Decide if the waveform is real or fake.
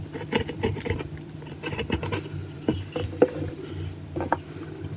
fake